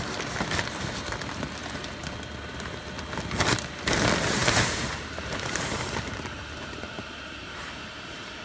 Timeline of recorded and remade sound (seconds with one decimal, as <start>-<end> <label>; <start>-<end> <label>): 0.0-4.4 recorded; 4.4-8.4 remade